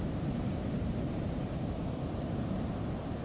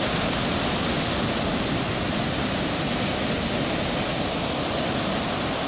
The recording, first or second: second